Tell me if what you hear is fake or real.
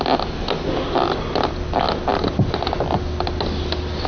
real